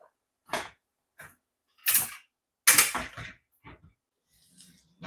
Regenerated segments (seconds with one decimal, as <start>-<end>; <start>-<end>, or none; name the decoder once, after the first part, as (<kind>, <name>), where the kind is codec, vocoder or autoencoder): 0.0-1.8 (vocoder, Vocos)